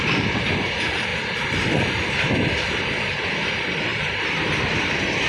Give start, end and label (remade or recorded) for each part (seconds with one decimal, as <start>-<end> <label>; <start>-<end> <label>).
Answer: 0.0-1.1 recorded; 1.1-3.0 remade; 3.0-3.9 recorded; 3.9-5.3 remade